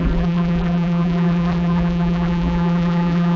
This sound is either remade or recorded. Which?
remade